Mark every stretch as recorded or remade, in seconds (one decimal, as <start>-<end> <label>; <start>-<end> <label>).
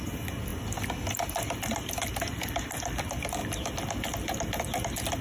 0.0-5.2 recorded